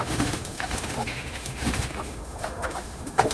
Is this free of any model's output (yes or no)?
no